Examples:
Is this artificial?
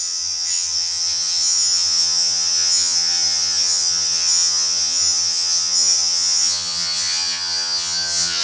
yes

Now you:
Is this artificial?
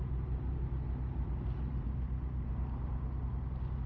no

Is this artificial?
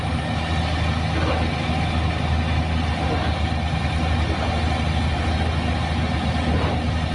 no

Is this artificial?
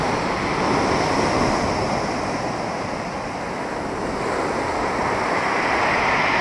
no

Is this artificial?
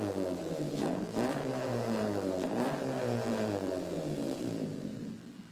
yes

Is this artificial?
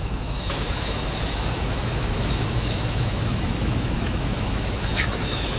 yes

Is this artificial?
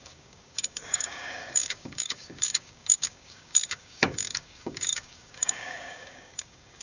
yes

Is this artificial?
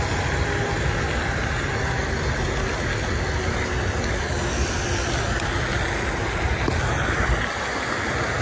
no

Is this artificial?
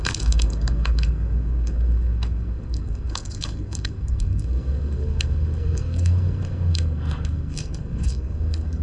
yes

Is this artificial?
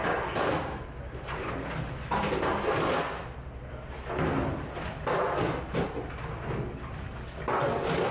no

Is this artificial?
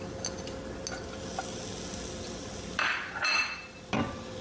no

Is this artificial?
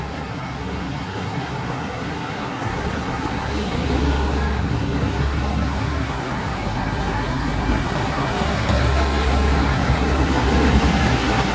yes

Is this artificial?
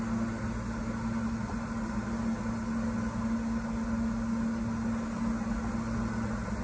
no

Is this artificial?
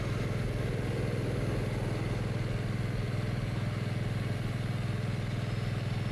no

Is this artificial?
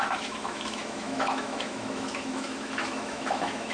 yes